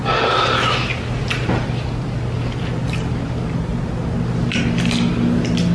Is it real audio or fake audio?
real